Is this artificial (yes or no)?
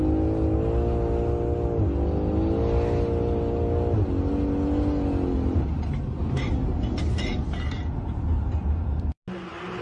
no